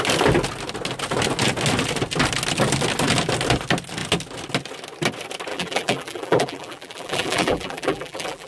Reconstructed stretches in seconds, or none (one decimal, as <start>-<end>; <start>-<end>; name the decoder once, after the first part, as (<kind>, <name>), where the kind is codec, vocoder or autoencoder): 5.5-8.5 (vocoder, BigVGAN v2)